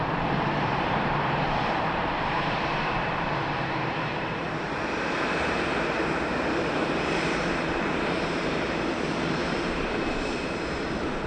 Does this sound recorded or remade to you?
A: remade